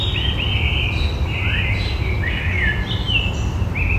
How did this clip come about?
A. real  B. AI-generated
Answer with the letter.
A